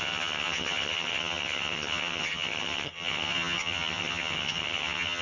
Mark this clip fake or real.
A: fake